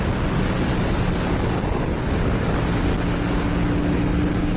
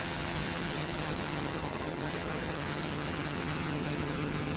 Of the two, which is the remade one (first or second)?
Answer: second